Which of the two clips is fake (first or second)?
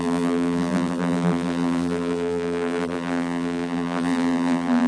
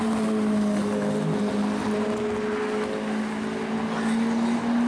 first